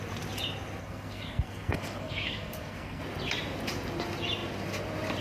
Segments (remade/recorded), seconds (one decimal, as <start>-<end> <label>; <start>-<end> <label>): 0.0-0.8 recorded; 0.8-3.0 remade; 3.0-5.2 recorded